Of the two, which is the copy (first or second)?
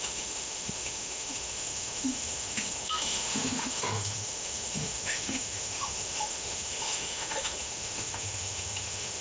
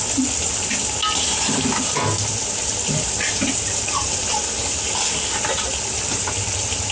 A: first